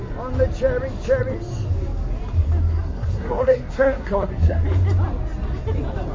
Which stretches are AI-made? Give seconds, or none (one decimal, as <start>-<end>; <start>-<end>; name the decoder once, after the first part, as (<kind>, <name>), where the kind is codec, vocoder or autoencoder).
2.8-4.6 (codec, SNAC)